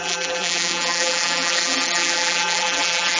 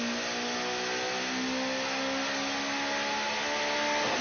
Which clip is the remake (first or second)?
first